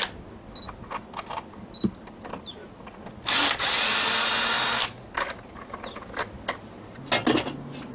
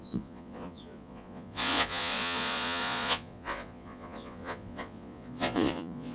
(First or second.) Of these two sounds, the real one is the first